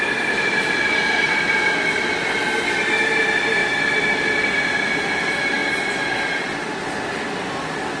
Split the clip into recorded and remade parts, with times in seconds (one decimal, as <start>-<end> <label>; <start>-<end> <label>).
0.0-8.0 recorded